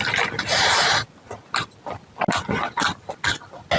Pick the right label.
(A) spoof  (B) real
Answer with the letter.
B